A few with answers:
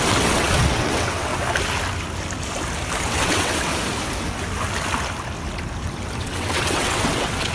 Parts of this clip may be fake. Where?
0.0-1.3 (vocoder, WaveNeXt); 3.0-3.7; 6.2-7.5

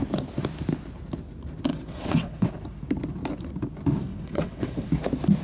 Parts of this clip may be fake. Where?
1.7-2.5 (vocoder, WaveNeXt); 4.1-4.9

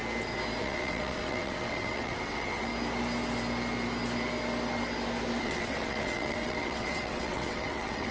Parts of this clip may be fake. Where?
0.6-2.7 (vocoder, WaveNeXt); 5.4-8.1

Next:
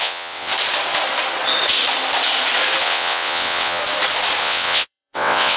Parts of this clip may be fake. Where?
0.0-0.5 (vocoder, WaveNeXt); 2.8-3.8; 4.4-5.6

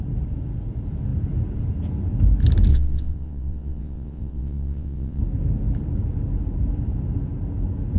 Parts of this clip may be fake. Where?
2.7-5.2 (vocoder, WaveNeXt)

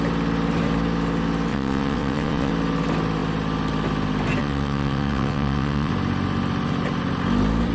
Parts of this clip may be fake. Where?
1.5-2.5 (vocoder, WaveNeXt); 4.4-5.9

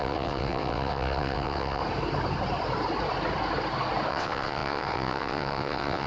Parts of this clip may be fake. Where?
0.0-1.8 (vocoder, WaveNeXt); 4.1-6.1

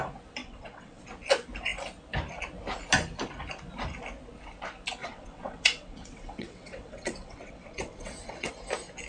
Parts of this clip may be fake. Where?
0.4-1.0 (vocoder, WaveNeXt); 5.0-8.5